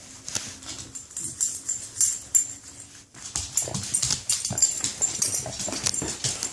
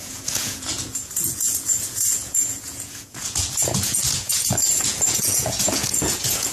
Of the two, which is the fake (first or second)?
second